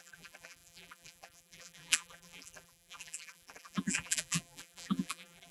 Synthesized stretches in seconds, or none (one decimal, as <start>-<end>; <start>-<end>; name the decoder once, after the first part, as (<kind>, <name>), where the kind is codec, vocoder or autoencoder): 0.0-5.5 (vocoder, BigVGAN v2)